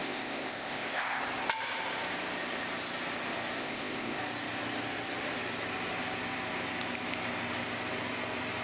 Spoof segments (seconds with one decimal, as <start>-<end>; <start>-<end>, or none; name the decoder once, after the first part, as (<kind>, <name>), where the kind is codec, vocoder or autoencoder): 0.0-1.2 (codec, ZipCodec); 3.6-4.2